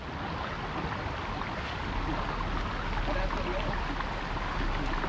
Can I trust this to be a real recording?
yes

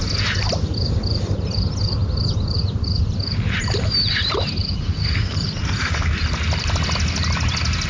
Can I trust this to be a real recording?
yes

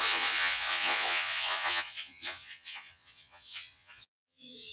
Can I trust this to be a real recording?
no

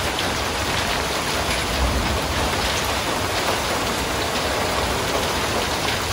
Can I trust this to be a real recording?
yes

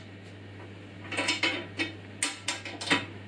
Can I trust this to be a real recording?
yes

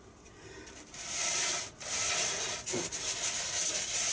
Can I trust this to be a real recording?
yes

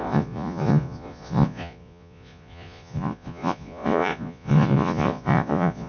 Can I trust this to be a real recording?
no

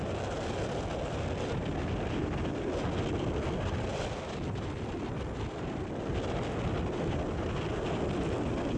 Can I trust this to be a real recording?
yes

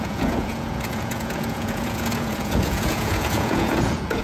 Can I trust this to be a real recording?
no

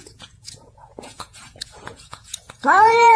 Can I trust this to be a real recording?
no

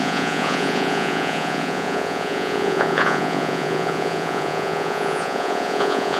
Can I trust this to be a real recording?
no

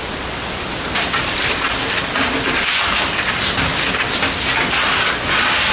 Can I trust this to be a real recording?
yes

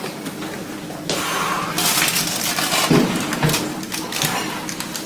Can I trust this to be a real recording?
yes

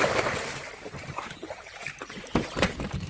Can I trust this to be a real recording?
yes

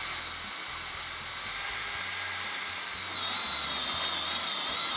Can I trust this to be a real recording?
yes